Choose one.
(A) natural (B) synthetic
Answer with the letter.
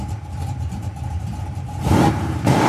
B